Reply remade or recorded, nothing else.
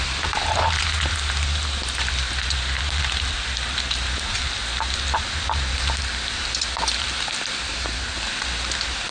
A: recorded